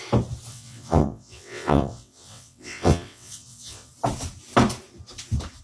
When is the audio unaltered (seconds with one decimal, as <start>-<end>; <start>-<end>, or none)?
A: 0.0-0.5; 3.9-5.6